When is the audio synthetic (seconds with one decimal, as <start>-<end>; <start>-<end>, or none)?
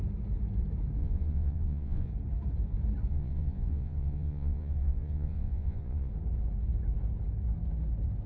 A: 1.0-2.1; 3.1-6.1